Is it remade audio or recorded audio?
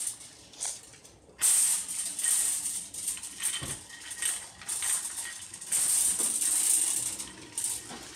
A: recorded